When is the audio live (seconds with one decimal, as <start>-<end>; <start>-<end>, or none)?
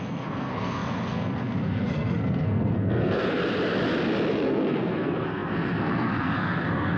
3.4-4.3